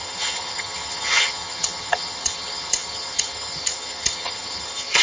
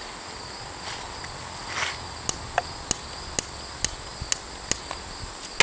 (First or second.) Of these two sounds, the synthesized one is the first